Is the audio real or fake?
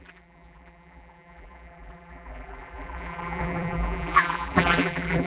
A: fake